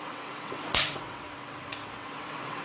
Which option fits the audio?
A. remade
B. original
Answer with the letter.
A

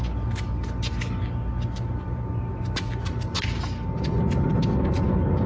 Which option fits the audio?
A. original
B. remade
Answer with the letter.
A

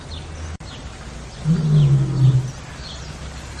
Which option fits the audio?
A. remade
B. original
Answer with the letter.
B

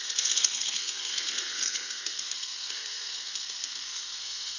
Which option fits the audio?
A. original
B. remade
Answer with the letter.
B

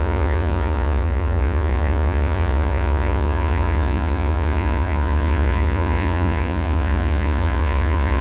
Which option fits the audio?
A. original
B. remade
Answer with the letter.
B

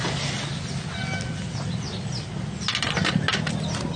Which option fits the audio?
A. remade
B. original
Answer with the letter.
B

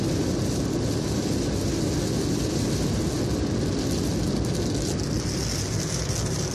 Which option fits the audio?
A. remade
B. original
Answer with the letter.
B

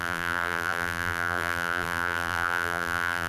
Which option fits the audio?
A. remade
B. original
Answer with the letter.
A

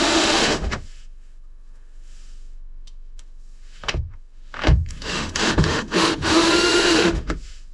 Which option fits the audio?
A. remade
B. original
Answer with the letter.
A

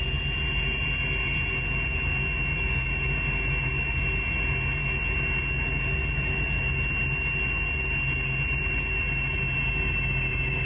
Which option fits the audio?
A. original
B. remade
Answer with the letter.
A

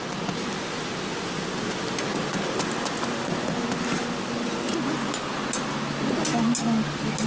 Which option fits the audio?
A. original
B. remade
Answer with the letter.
A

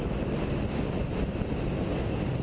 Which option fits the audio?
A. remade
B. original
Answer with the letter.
B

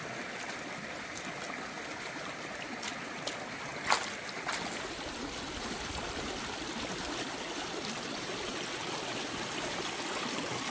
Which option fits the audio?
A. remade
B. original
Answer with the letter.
B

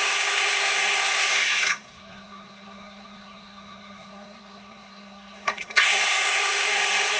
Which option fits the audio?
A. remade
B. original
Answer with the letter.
A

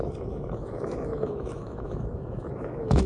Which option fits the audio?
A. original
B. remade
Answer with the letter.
B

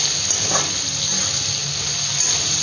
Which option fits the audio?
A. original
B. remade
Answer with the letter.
A